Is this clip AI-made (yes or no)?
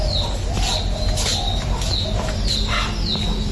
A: no